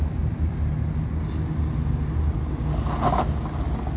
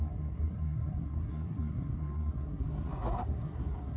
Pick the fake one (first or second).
second